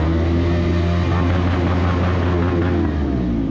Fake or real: real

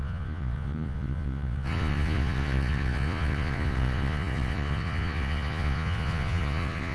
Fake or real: fake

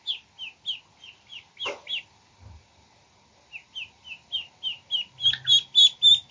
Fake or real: real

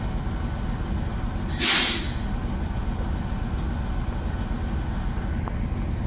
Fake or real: real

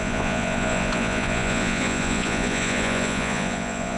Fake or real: fake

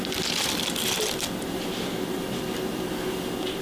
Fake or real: real